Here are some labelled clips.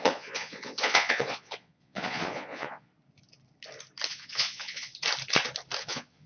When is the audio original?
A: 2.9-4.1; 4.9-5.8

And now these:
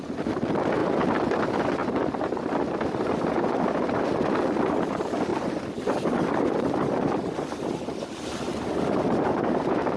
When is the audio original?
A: 0.0-0.8; 1.4-1.8; 3.9-5.3; 9.4-10.0

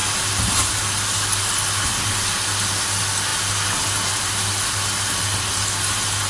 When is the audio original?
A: 0.0-6.3

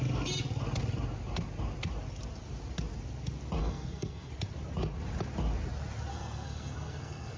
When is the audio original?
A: 0.0-3.6; 4.3-6.1

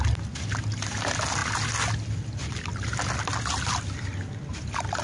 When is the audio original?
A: 0.0-5.0

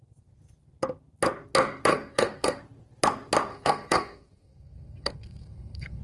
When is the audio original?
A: 0.0-1.9; 2.6-3.5

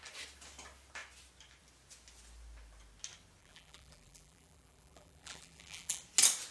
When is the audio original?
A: 0.0-3.4; 6.0-6.5